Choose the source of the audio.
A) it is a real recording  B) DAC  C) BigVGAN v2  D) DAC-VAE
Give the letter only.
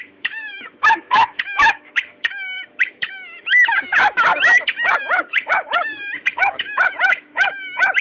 D